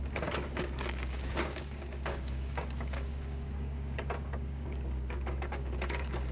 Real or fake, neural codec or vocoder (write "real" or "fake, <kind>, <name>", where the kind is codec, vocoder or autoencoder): fake, codec, DAC